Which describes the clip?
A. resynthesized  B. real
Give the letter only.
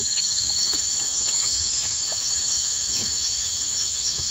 A